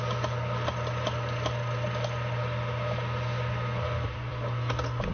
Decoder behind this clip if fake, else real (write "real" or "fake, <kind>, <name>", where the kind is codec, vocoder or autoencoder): real